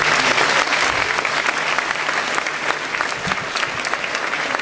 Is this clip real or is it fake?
real